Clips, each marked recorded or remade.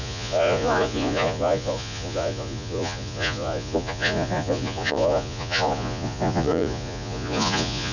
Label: remade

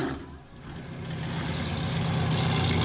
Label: recorded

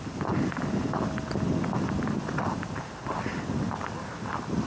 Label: recorded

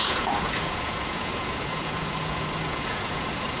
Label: remade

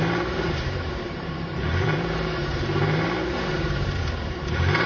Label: remade